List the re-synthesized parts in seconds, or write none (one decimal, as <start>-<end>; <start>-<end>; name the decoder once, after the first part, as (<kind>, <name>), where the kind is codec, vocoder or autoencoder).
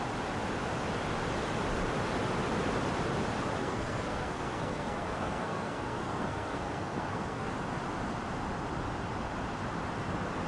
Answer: 3.6-7.5 (codec, SNAC)